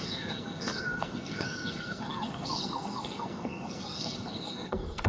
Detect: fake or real fake